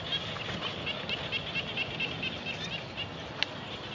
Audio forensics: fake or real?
real